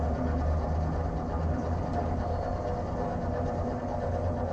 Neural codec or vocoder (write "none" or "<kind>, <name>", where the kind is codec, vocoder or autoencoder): none